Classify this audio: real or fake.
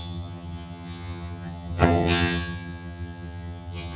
fake